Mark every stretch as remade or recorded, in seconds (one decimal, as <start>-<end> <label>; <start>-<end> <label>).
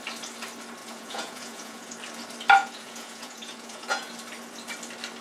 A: 0.0-0.8 recorded; 0.8-1.9 remade; 1.9-2.6 recorded; 2.6-4.1 remade; 4.1-5.2 recorded